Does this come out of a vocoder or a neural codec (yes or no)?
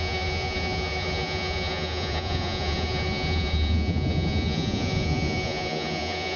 yes